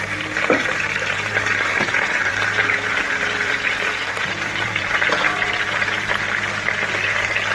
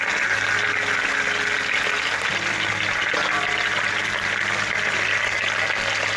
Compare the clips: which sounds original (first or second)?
second